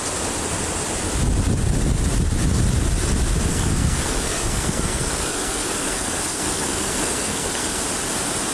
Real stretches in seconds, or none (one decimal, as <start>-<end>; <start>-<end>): 0.0-3.5; 7.8-8.5

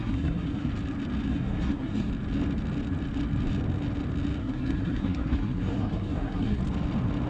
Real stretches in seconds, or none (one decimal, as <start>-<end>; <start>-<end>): 0.7-1.3; 2.1-4.4; 6.6-7.3

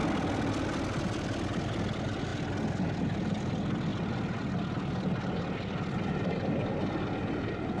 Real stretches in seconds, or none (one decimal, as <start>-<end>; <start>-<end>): 0.0-7.8

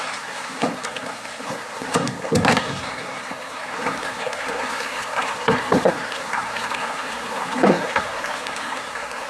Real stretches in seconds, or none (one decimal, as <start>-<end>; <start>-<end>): none

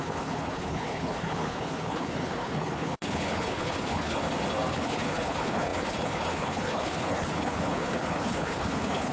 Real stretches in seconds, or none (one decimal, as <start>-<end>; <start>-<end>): 4.2-4.7

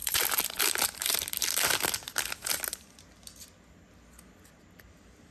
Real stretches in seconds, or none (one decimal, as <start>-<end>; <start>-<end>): 0.6-5.3

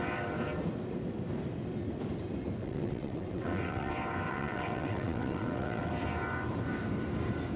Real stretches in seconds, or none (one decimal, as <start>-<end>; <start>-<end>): 0.0-2.6; 3.9-4.3; 5.9-7.6

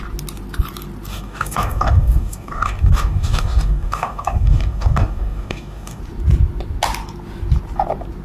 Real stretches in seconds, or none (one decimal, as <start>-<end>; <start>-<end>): 0.0-1.1; 6.0-8.2